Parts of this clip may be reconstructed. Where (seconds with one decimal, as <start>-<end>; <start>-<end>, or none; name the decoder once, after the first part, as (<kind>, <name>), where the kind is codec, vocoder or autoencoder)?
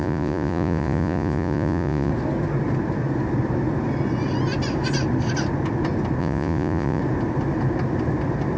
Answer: 0.0-2.1 (vocoder, Vocos); 6.2-7.0